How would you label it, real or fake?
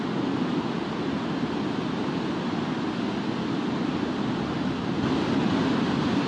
real